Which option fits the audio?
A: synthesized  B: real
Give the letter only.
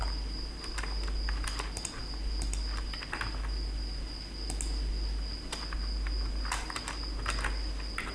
B